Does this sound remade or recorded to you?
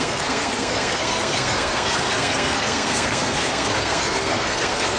remade